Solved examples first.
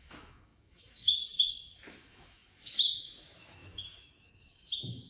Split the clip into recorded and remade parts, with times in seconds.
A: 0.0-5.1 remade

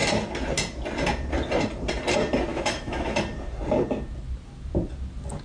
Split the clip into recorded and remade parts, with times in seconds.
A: 0.0-2.5 recorded; 2.5-3.2 remade; 3.2-5.4 recorded